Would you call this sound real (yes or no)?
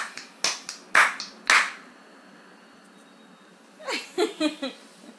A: yes